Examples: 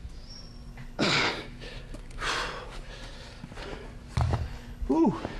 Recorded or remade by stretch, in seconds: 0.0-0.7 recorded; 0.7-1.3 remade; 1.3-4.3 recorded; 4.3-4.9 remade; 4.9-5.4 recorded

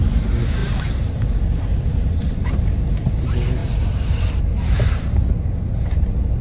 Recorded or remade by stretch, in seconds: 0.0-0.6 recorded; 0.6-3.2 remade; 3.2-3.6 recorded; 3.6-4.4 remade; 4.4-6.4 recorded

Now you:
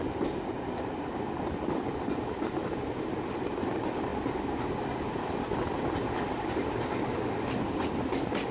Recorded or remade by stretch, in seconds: 0.0-4.1 recorded; 4.1-4.6 remade; 4.6-8.5 recorded

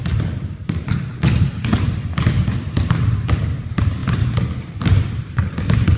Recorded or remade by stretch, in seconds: 0.0-6.0 recorded

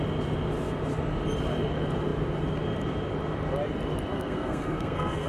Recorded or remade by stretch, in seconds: 0.0-4.1 recorded; 4.1-5.3 remade

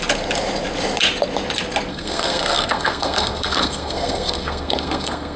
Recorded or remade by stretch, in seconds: 0.0-1.9 recorded; 1.9-5.4 remade

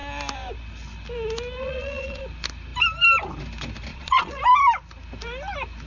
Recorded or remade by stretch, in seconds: 0.0-1.6 recorded; 1.6-2.2 remade; 2.2-3.9 recorded; 3.9-4.4 remade; 4.4-5.9 recorded